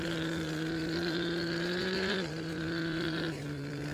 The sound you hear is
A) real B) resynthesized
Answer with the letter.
B